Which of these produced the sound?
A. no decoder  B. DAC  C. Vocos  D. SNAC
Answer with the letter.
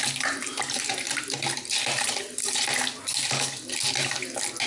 A